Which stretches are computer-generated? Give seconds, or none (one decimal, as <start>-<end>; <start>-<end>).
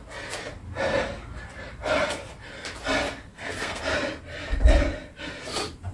3.3-3.8